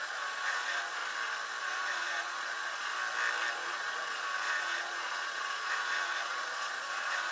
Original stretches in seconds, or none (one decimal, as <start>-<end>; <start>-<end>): 1.0-1.6; 2.9-3.5